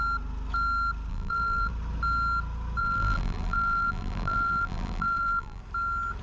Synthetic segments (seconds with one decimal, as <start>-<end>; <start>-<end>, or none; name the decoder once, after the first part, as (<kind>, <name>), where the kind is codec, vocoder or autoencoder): 1.1-1.7 (vocoder, BigVGAN v2); 2.8-5.6